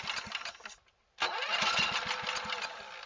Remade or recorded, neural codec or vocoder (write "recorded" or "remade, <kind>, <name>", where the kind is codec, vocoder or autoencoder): recorded